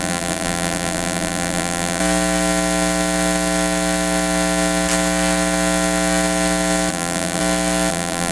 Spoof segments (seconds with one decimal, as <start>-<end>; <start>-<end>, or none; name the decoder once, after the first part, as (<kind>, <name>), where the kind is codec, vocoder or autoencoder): 0.0-2.0 (vocoder, BigVGAN v2); 6.9-7.4; 7.9-8.3